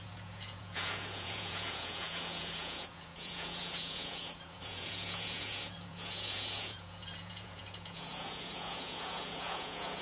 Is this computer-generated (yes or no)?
yes